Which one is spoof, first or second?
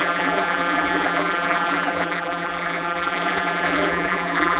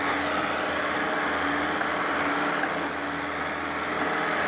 first